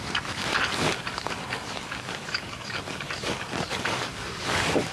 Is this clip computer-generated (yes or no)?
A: yes